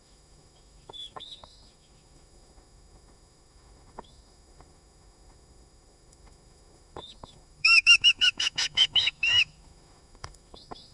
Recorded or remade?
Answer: remade